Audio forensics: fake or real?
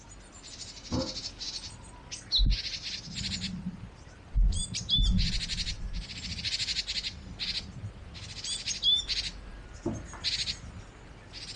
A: real